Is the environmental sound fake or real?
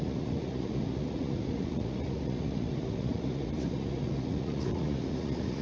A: fake